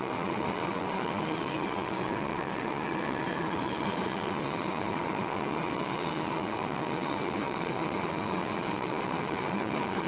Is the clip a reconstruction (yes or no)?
yes